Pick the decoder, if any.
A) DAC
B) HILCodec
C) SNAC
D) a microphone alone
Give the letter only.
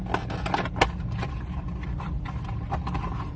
D